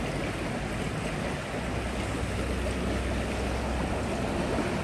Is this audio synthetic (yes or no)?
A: no